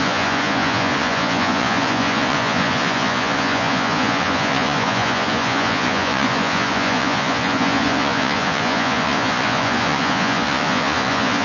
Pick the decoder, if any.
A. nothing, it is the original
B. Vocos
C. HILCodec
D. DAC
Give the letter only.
B